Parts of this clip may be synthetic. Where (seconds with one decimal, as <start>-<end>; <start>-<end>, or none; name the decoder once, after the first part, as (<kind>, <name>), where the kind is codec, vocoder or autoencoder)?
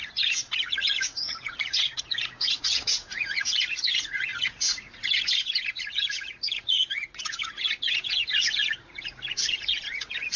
0.0-10.4 (vocoder, Vocos)